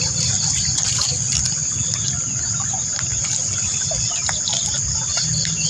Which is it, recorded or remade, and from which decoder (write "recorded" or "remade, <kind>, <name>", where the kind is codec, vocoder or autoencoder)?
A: recorded